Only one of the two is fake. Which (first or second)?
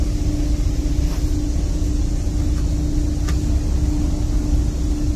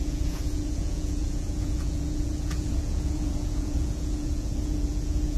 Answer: second